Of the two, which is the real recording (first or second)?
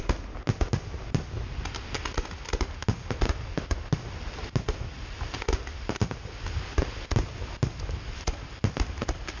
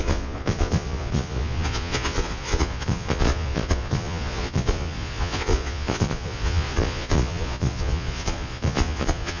first